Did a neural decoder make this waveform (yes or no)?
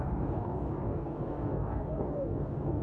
yes